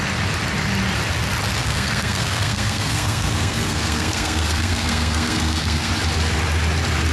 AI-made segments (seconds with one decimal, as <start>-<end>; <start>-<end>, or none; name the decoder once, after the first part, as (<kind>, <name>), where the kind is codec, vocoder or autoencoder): 1.6-5.9 (codec, SNAC)